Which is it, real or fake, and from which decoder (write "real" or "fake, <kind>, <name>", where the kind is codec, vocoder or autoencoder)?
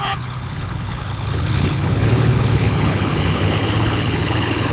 fake, codec, HILCodec